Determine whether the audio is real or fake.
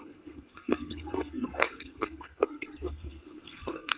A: fake